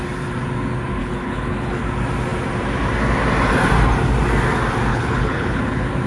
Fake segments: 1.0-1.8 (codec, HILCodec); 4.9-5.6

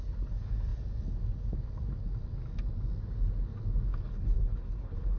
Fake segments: 3.9-5.2 (codec, HILCodec)

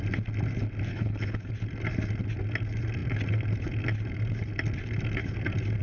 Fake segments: 0.9-1.5 (codec, HILCodec)

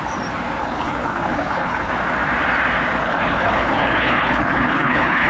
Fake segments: 0.6-1.9 (codec, HILCodec); 3.0-5.3

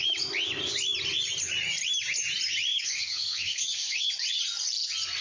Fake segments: 2.7-4.1 (codec, HILCodec)

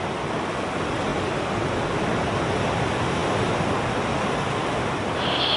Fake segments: none

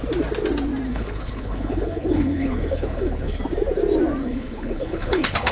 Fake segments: 0.9-3.4 (codec, HILCodec); 4.2-5.5

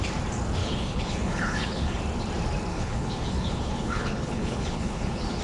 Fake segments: 0.6-2.0 (codec, HILCodec); 2.7-5.4